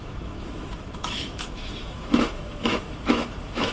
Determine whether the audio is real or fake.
fake